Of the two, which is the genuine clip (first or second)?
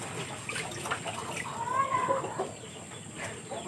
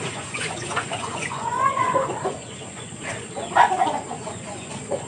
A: first